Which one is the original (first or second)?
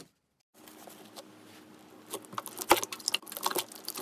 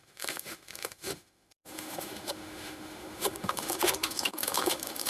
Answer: first